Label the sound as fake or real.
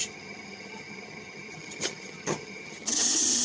fake